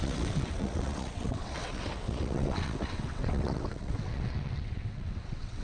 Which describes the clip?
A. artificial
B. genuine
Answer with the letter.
A